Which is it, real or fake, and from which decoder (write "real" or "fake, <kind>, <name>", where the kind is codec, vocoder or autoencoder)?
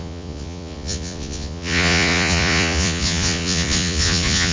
fake, vocoder, Vocos